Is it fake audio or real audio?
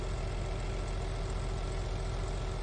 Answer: real